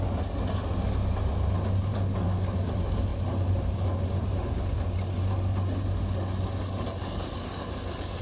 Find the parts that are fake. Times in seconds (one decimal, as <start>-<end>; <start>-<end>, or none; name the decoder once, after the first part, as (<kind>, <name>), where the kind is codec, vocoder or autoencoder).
1.9-2.7 (codec, DAC); 7.0-7.7